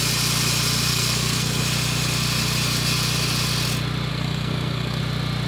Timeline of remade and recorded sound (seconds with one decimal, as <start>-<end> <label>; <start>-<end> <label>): 0.0-0.9 recorded; 0.9-1.6 remade; 1.6-4.1 recorded; 4.1-5.0 remade; 5.0-5.5 recorded